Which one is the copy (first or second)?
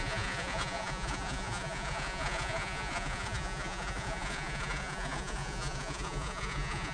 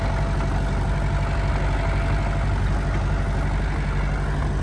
first